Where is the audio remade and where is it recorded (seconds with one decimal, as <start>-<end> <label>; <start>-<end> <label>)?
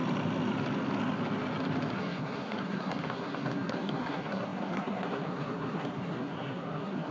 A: 0.0-2.0 recorded; 2.0-7.1 remade